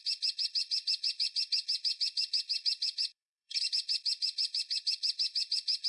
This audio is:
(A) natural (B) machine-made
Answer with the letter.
B